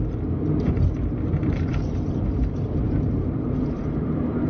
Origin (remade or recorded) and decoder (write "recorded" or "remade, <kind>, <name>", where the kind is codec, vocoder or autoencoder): recorded